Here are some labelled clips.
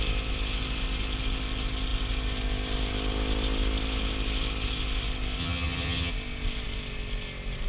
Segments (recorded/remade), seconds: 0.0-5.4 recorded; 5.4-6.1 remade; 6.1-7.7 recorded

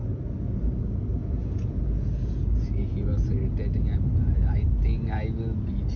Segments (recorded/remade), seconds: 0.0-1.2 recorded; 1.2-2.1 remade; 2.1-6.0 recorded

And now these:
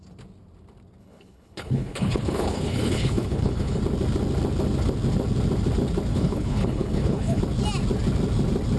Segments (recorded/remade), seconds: 0.0-1.0 recorded; 1.0-3.8 remade; 3.8-6.1 recorded; 6.1-7.4 remade; 7.4-8.8 recorded